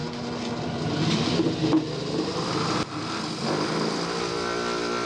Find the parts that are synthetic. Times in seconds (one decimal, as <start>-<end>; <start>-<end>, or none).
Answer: none